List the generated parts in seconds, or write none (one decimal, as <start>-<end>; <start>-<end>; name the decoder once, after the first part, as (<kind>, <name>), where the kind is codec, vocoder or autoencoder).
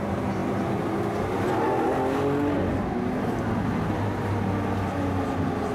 none